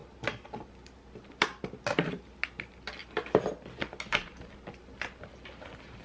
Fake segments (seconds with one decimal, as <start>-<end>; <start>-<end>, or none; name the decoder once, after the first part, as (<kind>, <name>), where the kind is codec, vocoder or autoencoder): none